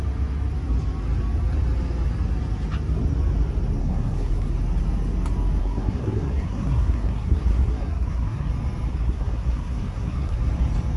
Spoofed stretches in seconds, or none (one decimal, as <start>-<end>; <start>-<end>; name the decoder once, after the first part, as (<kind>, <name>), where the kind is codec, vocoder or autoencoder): 3.8-4.5 (codec, SNAC); 5.6-8.5; 8.9-10.4